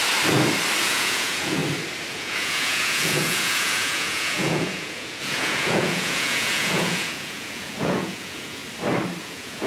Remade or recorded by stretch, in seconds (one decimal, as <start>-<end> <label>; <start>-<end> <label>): 0.0-0.8 recorded; 0.8-1.6 remade; 1.6-2.1 recorded; 2.1-8.6 remade; 8.6-9.2 recorded; 9.2-9.7 remade